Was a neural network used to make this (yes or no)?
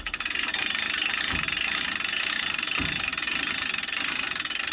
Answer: no